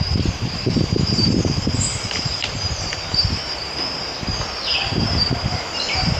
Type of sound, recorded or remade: remade